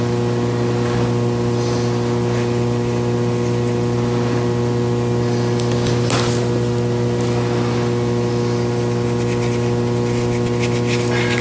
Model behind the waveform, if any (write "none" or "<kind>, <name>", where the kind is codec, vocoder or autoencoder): none